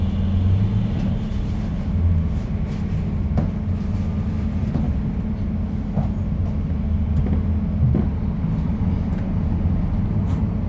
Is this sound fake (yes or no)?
no